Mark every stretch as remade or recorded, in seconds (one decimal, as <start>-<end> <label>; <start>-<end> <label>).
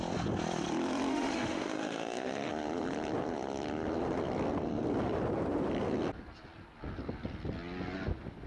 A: 0.0-1.1 recorded; 1.1-2.5 remade; 2.5-8.5 recorded